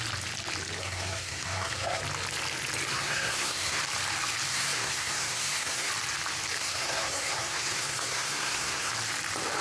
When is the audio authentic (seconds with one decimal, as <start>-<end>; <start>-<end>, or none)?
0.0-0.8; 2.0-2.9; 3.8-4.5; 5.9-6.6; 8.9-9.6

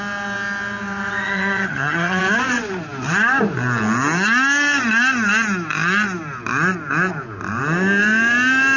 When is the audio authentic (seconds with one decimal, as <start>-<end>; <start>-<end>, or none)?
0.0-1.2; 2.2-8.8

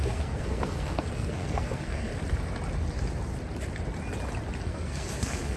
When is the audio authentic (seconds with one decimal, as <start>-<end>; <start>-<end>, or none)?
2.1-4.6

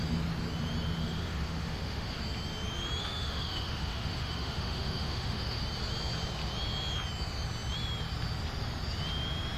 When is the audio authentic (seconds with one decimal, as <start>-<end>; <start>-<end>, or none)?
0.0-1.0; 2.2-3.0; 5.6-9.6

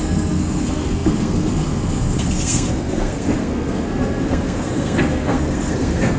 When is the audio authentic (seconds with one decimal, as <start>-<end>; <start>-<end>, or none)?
none

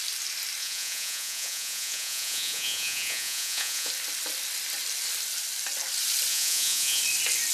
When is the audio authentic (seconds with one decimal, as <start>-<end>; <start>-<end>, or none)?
0.0-0.6; 3.9-6.3; 7.0-7.5